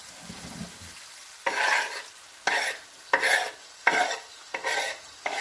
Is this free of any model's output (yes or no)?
yes